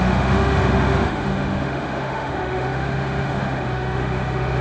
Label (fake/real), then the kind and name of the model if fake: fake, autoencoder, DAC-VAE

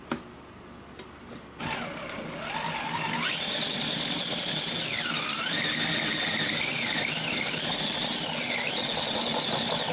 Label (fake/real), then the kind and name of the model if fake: real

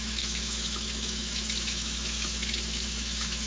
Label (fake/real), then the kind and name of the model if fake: fake, autoencoder, DAC-VAE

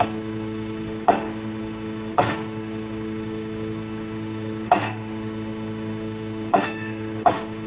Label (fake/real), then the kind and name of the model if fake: fake, autoencoder, DAC-VAE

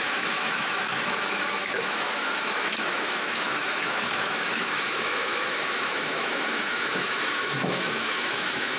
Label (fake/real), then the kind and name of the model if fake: fake, autoencoder, DAC-VAE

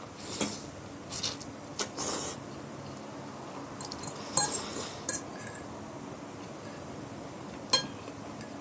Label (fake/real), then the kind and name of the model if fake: real